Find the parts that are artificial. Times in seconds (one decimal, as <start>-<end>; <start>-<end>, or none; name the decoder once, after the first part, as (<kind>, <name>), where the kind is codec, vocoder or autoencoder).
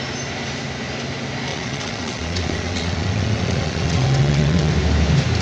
1.5-4.7 (vocoder, WaveNeXt)